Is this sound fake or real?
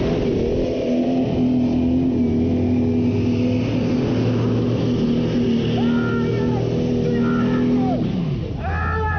real